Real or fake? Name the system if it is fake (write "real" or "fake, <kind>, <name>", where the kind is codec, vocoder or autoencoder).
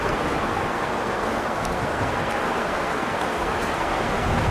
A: fake, codec, SNAC